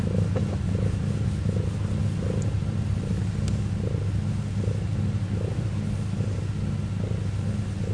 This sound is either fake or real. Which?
real